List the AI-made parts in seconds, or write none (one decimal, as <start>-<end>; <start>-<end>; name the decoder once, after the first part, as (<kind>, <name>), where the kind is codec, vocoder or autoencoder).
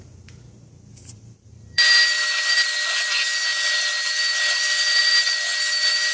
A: 0.9-2.0 (vocoder, BigVGAN v2)